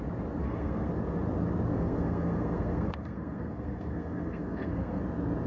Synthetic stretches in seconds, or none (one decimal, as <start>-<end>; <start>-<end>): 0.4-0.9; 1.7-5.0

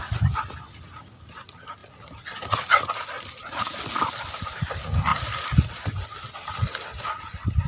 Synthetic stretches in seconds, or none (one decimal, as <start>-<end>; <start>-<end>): none

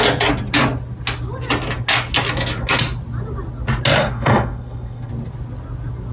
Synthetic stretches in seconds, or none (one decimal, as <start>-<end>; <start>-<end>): 4.0-5.1

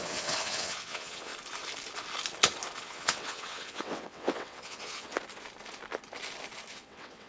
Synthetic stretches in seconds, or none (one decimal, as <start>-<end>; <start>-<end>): 0.0-1.3; 2.8-5.1; 6.7-7.3

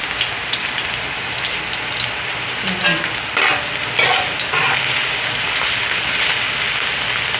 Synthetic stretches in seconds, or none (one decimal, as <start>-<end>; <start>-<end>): none

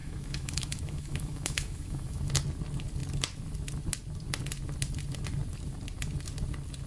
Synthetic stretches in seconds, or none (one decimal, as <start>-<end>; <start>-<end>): 0.0-2.3

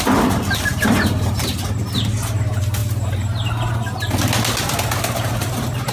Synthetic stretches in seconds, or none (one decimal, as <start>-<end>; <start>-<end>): none